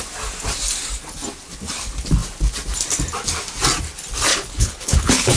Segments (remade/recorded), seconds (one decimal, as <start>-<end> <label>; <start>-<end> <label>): 0.0-4.3 recorded; 4.3-5.4 remade